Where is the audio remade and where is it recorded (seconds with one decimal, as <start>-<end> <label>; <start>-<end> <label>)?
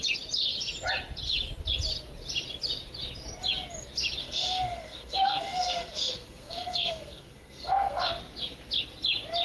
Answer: 0.0-4.2 recorded; 4.2-8.2 remade; 8.2-9.4 recorded